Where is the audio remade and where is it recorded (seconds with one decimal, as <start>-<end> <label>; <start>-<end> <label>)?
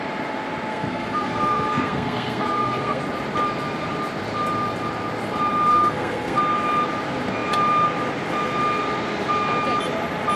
0.0-0.7 recorded; 0.7-3.0 remade; 3.0-5.7 recorded; 5.7-6.4 remade; 6.4-10.4 recorded